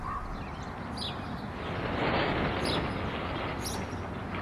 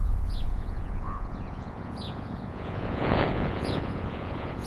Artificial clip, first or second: second